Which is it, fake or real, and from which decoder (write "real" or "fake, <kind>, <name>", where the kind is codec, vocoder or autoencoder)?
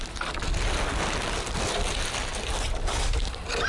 real